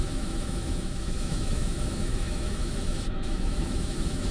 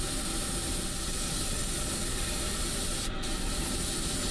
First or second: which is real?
second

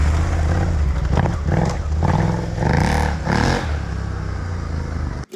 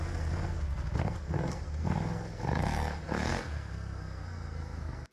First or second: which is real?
first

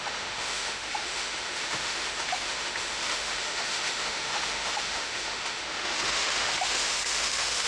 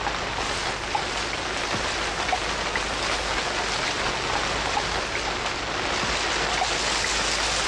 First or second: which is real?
second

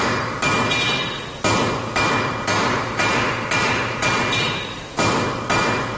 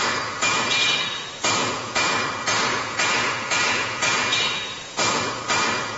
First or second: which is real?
first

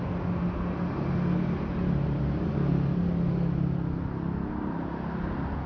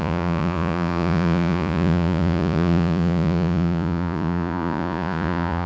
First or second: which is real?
first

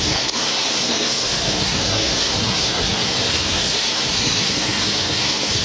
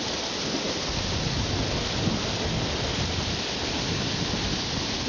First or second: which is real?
second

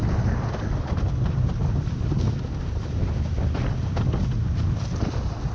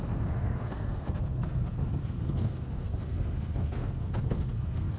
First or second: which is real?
first